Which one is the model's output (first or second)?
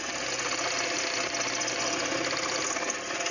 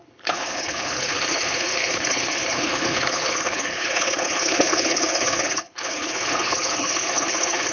second